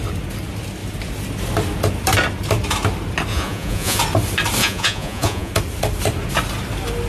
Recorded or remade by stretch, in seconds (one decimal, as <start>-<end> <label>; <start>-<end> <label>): 0.0-3.3 recorded; 3.3-4.0 remade; 4.0-4.6 recorded; 4.6-5.5 remade; 5.5-7.1 recorded